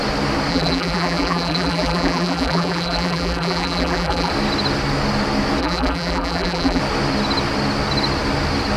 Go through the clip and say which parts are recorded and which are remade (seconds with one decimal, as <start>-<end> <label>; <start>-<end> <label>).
0.0-0.5 recorded; 0.5-4.3 remade; 4.3-5.6 recorded; 5.6-6.8 remade; 6.8-8.8 recorded